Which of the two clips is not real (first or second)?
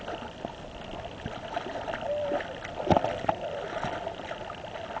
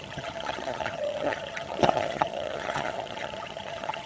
second